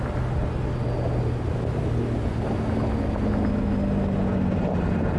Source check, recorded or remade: recorded